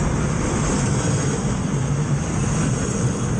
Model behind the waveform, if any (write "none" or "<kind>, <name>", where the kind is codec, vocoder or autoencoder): none